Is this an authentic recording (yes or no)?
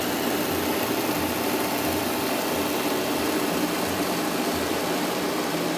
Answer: no